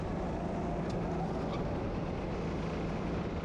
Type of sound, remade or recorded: recorded